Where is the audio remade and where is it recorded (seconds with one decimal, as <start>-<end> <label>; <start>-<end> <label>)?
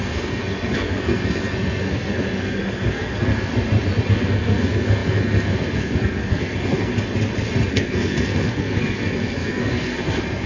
0.0-3.5 remade; 3.5-4.1 recorded; 4.1-6.9 remade; 6.9-7.7 recorded; 7.7-10.5 remade